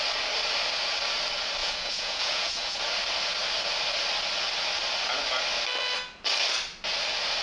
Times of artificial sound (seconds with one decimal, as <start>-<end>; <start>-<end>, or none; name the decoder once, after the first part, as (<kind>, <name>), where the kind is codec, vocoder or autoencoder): 1.6-2.8 (vocoder, Vocos)